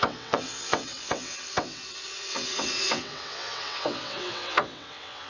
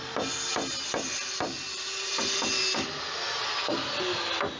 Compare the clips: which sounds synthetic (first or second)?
first